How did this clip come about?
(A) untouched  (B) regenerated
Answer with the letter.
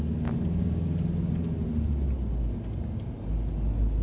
A